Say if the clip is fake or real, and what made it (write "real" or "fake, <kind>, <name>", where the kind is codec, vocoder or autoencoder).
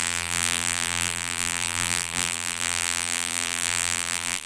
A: fake, vocoder, BigVGAN v2